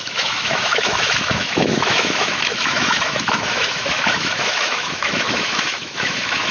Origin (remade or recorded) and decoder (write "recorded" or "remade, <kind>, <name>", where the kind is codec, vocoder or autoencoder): remade, autoencoder, DAC-VAE